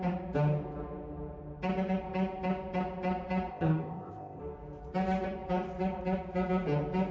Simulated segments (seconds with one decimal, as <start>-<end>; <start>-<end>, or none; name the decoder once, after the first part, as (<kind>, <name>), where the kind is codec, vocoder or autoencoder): 3.5-4.4 (codec, ZipCodec)